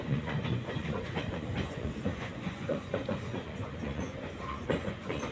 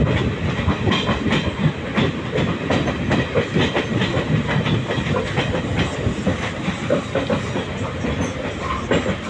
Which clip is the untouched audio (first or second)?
second